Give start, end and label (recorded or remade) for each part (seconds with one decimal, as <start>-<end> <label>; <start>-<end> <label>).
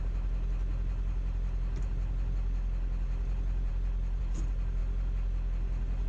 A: 0.0-6.1 recorded